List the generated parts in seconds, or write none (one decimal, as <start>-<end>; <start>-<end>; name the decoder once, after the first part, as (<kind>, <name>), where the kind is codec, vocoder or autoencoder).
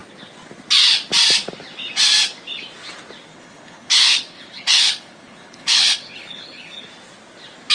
3.3-6.9 (codec, HILCodec)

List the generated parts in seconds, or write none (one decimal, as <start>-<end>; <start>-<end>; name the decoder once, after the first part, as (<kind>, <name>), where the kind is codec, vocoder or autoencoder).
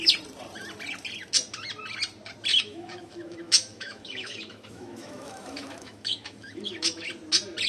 2.5-7.1 (autoencoder, DAC-VAE)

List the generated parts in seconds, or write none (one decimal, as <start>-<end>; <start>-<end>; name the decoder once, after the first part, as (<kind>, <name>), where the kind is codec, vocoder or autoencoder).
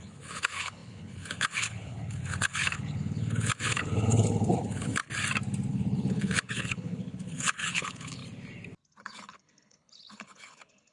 0.0-5.0 (codec, HILCodec); 5.7-8.2; 9.0-10.9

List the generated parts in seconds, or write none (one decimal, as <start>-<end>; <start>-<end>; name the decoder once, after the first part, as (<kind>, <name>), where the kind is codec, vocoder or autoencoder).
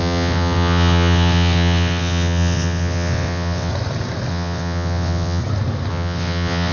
0.0-3.7 (vocoder, WaveNeXt); 4.3-5.4; 5.9-6.7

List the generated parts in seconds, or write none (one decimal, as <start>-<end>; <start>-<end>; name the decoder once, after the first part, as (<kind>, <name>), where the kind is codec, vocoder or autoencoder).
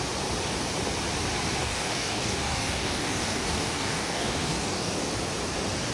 1.6-5.1 (codec, DAC)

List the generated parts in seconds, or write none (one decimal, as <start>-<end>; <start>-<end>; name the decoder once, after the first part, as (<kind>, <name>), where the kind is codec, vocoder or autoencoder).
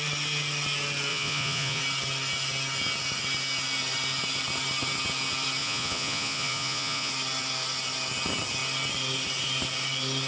1.1-1.8 (vocoder, Vocos); 5.6-7.1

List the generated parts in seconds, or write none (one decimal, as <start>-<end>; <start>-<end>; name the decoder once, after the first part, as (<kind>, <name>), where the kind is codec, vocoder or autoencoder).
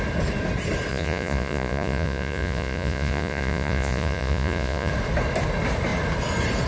0.9-4.9 (vocoder, Vocos)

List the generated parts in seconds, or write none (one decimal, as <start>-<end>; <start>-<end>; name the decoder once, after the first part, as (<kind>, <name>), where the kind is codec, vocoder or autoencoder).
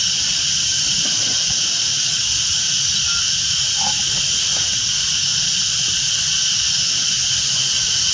1.9-2.4 (vocoder, WaveNeXt)